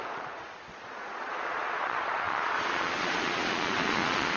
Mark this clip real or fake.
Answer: fake